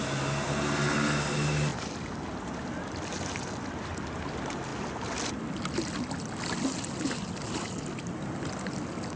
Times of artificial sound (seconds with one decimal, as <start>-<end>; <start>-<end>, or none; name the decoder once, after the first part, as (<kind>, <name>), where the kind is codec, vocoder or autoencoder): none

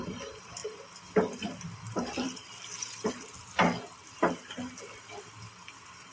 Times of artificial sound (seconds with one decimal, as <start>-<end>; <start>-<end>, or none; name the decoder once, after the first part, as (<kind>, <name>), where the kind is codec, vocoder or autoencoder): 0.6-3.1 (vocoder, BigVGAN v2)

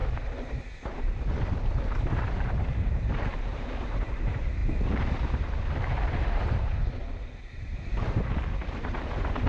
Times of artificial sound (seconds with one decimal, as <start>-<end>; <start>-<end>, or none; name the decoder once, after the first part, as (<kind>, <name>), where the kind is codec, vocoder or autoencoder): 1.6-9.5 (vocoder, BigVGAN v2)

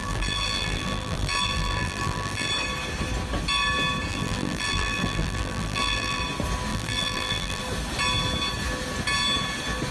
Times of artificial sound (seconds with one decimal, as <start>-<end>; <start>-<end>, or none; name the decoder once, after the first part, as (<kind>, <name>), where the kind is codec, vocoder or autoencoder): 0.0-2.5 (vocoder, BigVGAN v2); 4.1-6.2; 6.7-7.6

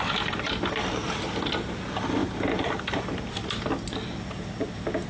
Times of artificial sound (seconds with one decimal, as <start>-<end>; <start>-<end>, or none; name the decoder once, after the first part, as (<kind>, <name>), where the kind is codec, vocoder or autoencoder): none